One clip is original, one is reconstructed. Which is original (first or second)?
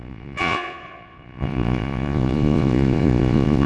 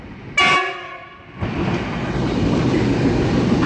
second